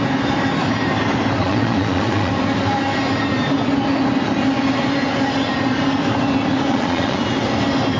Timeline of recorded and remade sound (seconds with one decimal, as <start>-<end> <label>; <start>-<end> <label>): 0.0-1.4 recorded; 1.4-2.3 remade; 2.3-6.7 recorded; 6.7-7.2 remade; 7.2-8.0 recorded